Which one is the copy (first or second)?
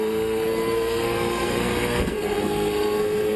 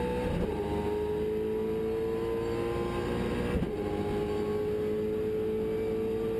first